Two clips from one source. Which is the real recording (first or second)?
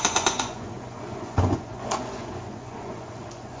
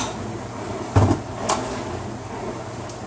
second